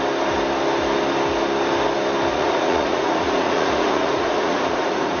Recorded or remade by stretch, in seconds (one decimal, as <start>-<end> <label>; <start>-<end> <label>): 0.0-2.3 recorded; 2.3-5.2 remade